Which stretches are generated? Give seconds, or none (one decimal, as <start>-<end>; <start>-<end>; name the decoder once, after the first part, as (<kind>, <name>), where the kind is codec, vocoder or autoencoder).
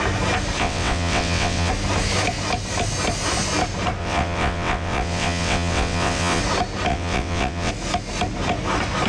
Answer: 0.6-1.7 (vocoder, WaveNeXt); 4.0-6.4; 6.9-7.7